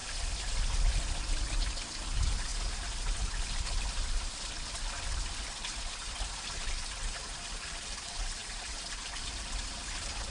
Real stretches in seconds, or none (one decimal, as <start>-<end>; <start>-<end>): 0.0-8.4; 9.3-10.3